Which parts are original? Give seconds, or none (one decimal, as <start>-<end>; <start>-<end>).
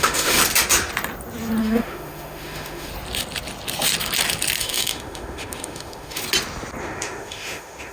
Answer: 0.4-1.6; 2.9-4.6; 6.2-6.8